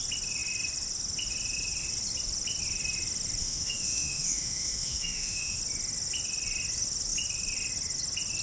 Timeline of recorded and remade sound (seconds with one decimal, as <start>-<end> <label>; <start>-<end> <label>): 0.0-3.4 recorded; 3.4-5.6 remade; 5.6-8.4 recorded